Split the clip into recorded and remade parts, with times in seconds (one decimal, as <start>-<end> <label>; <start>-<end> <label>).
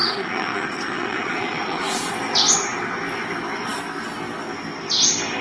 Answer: 0.0-2.1 remade; 2.1-5.4 recorded